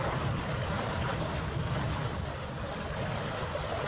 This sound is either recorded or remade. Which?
recorded